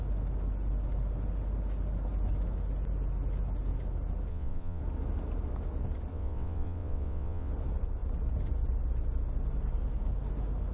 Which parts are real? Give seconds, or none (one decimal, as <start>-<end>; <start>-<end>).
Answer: 0.0-4.3; 4.8-6.1; 7.5-10.7